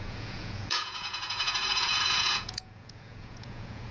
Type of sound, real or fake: fake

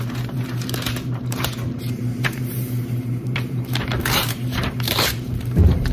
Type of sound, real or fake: fake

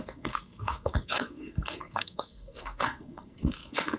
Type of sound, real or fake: fake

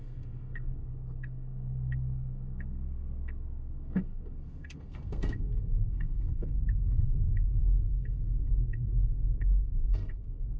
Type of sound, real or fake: fake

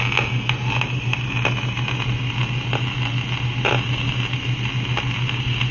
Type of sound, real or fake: real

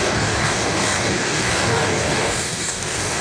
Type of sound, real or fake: fake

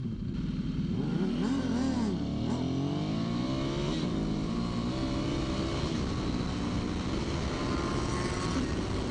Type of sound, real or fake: real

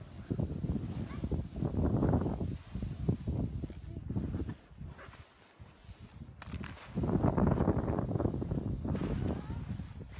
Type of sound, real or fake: real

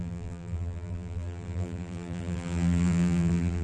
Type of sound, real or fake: fake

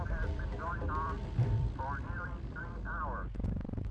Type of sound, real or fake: fake